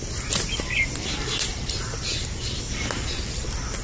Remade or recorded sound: recorded